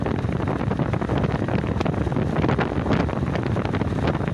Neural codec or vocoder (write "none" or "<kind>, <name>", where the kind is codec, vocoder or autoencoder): vocoder, BigVGAN v2